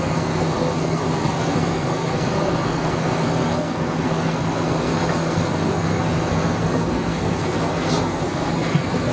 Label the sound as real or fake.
fake